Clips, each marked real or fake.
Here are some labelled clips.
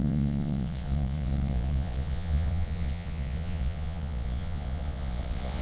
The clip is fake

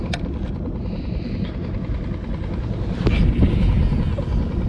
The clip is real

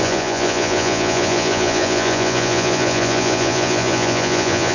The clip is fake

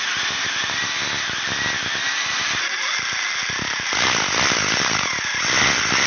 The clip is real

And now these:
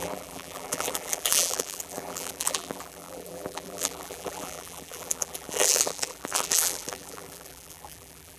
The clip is fake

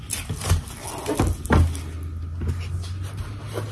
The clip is real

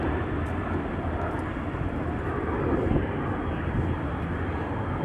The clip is real